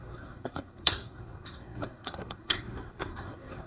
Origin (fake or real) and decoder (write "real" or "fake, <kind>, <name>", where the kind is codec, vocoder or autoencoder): fake, codec, SNAC